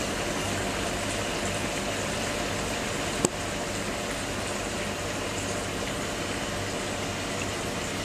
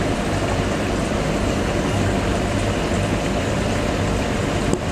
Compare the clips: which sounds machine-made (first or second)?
second